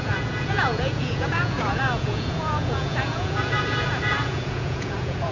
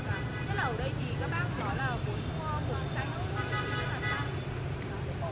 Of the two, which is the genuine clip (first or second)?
second